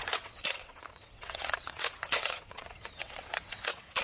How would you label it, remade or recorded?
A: remade